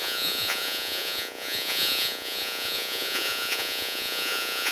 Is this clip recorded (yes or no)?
no